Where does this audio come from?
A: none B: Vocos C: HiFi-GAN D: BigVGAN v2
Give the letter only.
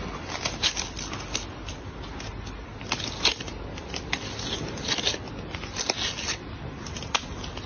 A